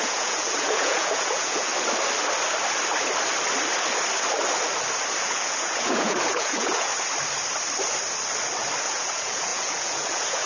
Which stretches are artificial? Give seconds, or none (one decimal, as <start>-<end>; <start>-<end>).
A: 0.0-1.7; 5.2-6.9; 8.8-10.5